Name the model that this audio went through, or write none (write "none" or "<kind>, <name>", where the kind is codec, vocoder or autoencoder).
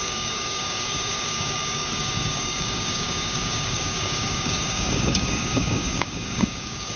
codec, DAC